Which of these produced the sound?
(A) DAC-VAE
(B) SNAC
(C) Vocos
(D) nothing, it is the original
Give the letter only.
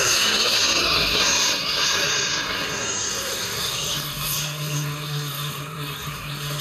B